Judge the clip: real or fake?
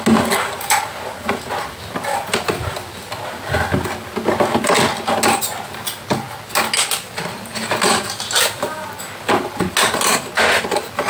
real